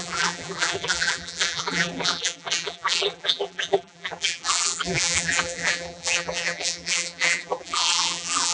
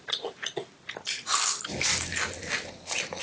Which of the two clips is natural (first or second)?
second